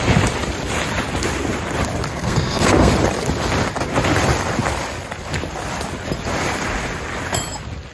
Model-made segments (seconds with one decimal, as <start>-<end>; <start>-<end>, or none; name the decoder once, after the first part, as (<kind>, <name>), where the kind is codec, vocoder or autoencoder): 2.1-2.9 (codec, SNAC)